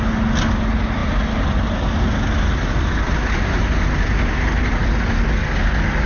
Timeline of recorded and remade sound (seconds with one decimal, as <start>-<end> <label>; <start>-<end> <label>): 0.0-6.1 recorded